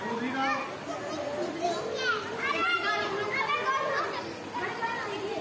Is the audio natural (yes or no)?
yes